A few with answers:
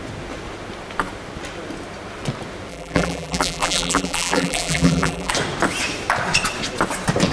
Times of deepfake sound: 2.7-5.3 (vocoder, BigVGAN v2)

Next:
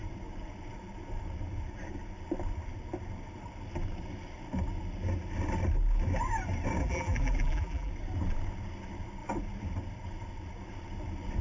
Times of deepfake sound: 6.8-7.9 (vocoder, BigVGAN v2)